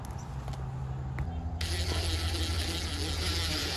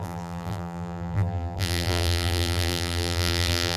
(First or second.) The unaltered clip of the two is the first